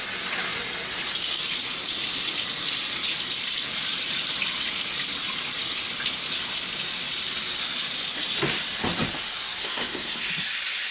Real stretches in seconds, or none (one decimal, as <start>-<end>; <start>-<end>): 0.0-9.6; 10.3-10.9